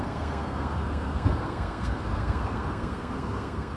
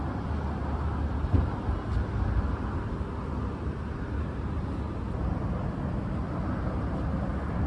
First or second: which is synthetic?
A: first